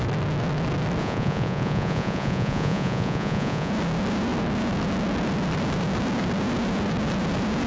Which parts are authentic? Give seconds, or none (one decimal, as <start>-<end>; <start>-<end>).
0.0-1.0; 3.7-7.7